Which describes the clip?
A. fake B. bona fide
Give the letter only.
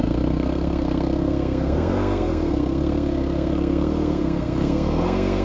A